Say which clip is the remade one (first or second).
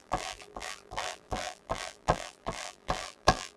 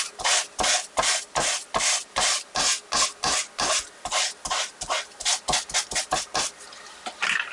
first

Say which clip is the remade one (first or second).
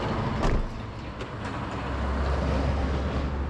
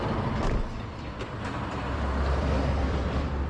second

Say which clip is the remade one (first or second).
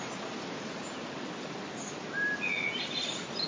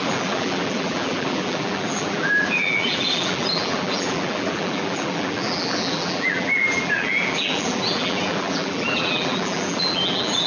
second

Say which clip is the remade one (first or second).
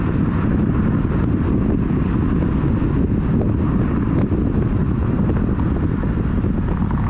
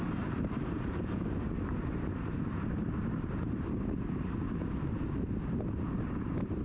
second